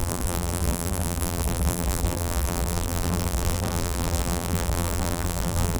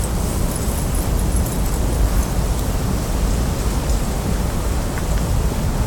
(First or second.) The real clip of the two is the second